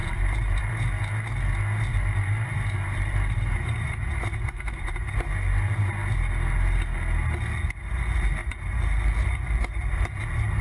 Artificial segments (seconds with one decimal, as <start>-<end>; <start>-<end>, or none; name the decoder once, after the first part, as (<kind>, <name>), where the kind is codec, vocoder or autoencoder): 0.0-0.7 (vocoder, BigVGAN v2); 1.9-5.0; 8.4-10.2